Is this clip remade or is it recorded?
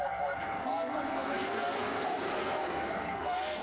remade